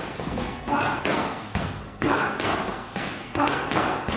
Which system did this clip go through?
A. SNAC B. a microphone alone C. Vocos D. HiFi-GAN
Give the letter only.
A